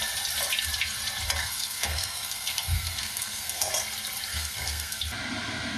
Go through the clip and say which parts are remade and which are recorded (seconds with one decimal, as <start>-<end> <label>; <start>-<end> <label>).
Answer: 0.0-1.4 recorded; 1.4-3.7 remade; 3.7-4.3 recorded; 4.3-5.0 remade; 5.0-5.8 recorded